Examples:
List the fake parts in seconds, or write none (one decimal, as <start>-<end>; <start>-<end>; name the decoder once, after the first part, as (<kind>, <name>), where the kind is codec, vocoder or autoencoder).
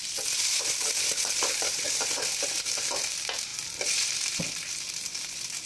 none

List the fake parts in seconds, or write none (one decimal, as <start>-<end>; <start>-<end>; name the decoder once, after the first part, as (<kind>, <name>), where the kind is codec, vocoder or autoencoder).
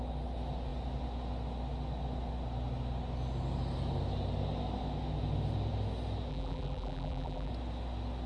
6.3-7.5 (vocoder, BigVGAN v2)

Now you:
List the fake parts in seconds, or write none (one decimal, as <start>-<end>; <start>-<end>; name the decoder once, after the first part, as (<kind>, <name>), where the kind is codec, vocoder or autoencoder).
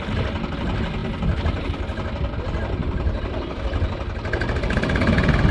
2.8-3.6 (vocoder, BigVGAN v2)